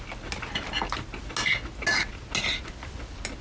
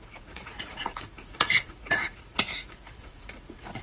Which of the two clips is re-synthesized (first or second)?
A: second